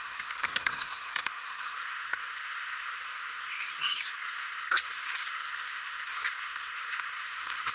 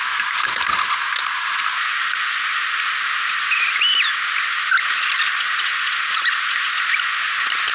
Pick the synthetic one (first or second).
first